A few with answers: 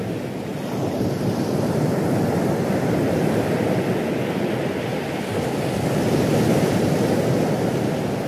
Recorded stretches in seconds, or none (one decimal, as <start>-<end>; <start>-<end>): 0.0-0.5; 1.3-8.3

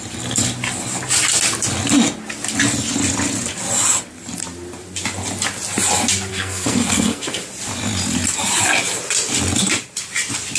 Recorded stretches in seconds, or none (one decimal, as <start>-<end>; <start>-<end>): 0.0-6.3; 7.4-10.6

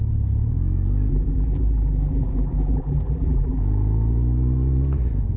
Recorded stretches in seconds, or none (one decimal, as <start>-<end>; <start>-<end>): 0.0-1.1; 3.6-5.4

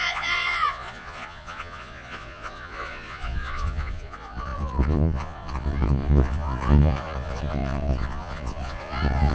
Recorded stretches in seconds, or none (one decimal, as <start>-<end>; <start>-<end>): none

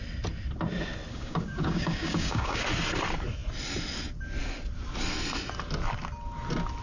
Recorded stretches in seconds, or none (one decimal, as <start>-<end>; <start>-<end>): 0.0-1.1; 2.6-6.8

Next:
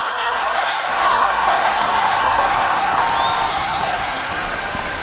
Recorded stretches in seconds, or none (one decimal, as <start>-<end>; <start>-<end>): 3.0-3.5; 4.3-5.0